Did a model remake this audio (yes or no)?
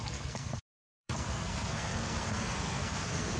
yes